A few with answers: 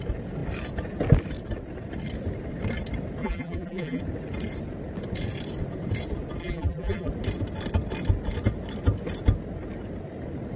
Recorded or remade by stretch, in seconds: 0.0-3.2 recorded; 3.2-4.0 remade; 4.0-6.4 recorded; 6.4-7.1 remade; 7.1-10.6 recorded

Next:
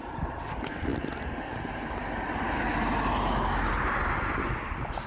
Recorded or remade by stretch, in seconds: 0.0-0.9 remade; 0.9-4.0 recorded; 4.0-5.1 remade

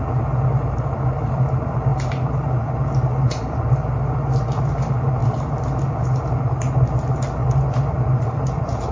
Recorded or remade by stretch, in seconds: 0.0-7.4 recorded; 7.4-8.9 remade

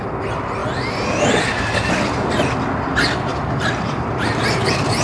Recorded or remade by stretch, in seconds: 0.0-3.3 recorded; 3.3-3.8 remade; 3.8-5.0 recorded

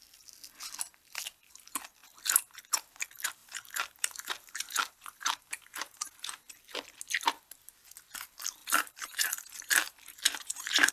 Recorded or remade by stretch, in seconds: 0.0-3.4 recorded; 3.4-6.5 remade; 6.5-8.6 recorded; 8.6-10.9 remade

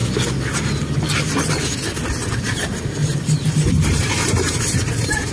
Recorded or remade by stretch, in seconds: 0.0-2.1 recorded; 2.1-5.3 remade

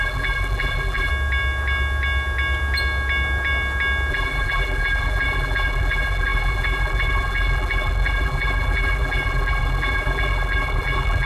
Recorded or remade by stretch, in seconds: 0.0-1.1 remade; 1.1-4.1 recorded; 4.1-11.3 remade

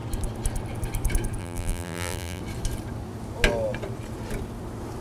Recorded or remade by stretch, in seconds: 0.0-1.4 recorded; 1.4-2.4 remade; 2.4-5.0 recorded